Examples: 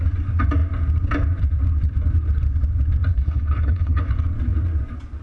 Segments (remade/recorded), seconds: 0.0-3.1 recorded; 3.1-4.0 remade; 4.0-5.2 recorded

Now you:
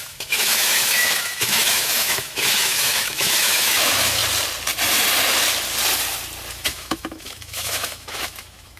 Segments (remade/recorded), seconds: 0.0-4.2 remade; 4.2-6.5 recorded; 6.5-8.8 remade